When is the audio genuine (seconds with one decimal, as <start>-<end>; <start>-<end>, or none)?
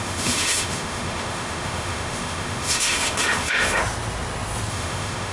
3.8-4.7